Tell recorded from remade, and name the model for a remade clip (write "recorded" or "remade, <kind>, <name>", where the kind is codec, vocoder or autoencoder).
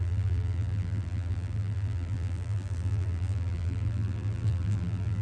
remade, vocoder, BigVGAN v2